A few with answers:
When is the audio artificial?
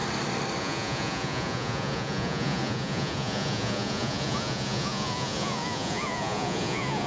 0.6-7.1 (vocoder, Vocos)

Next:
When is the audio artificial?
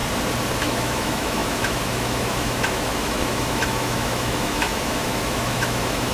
0.6-6.1 (autoencoder, DAC-VAE)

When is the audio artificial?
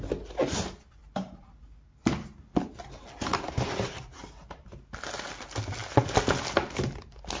none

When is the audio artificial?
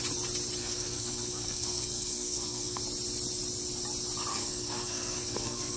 0.6-2.8 (codec, SNAC); 4.3-5.8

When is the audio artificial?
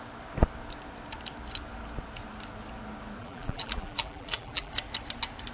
3.2-4.7 (vocoder, BigVGAN v2)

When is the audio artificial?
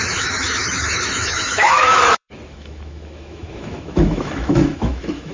0.0-5.3 (autoencoder, DAC-VAE)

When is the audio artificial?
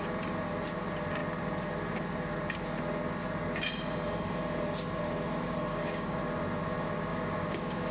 5.7-6.2 (codec, DAC); 7.1-7.9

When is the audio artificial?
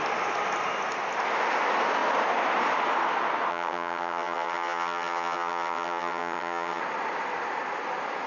3.5-6.8 (vocoder, HiFi-GAN)